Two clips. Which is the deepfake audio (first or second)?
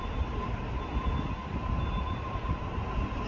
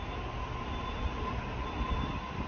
first